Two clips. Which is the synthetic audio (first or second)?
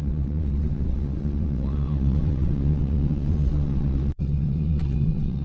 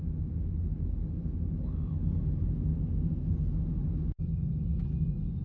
first